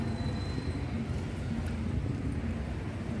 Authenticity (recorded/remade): recorded